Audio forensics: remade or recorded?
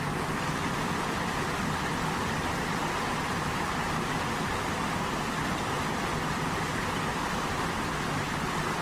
recorded